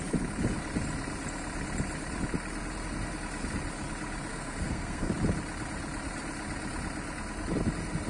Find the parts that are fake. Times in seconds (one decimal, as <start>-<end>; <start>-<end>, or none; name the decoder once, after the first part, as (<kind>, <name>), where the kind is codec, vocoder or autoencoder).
4.3-5.1 (codec, SNAC)